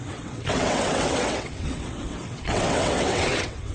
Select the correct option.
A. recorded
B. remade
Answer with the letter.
B